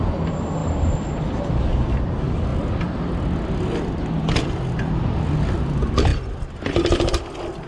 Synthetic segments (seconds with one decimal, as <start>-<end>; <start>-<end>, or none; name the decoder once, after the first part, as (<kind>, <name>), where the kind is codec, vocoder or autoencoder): none